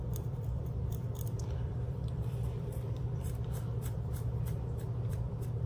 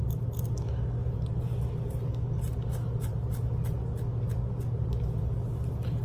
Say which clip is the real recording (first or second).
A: second